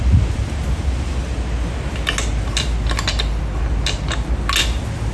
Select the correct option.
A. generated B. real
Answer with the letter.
B